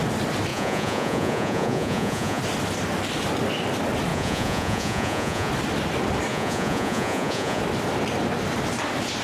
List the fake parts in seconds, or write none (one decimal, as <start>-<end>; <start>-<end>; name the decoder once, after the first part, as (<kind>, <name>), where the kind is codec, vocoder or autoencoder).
0.5-2.4 (vocoder, Vocos); 4.1-5.5; 6.3-7.6